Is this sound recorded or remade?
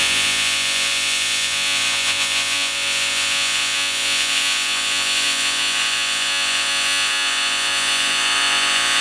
remade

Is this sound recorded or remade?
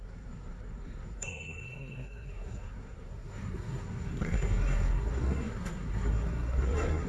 remade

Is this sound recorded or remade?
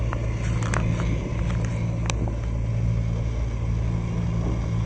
recorded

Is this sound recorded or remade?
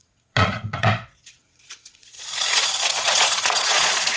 remade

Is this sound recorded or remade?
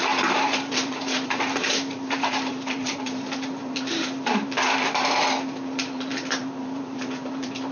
remade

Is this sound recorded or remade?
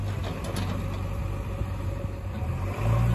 recorded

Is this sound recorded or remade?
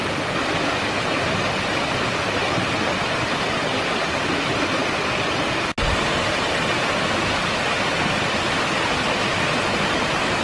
recorded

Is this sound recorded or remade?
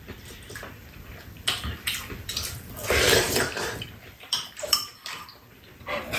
remade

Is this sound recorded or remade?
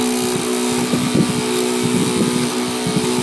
recorded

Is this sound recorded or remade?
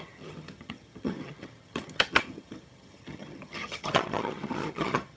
remade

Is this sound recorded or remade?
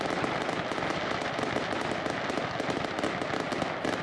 recorded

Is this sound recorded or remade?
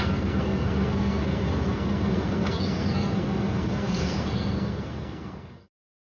remade